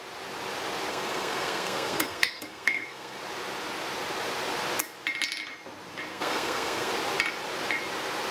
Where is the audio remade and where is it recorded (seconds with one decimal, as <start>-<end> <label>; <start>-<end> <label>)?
0.0-0.9 recorded; 0.9-3.2 remade; 3.2-6.1 recorded; 6.1-6.9 remade; 6.9-8.3 recorded